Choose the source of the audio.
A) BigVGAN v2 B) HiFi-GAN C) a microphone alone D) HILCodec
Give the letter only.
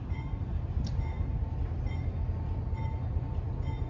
C